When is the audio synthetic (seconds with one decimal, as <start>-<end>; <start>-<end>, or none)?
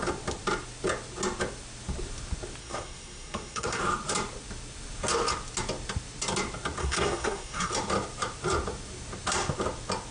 2.6-3.8; 6.8-7.7